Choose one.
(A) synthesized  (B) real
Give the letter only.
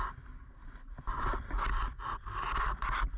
B